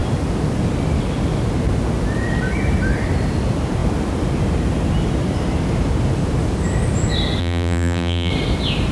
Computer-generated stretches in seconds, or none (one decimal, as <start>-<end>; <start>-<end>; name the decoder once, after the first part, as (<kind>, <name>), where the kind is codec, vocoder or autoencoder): 7.4-8.3 (vocoder, BigVGAN v2)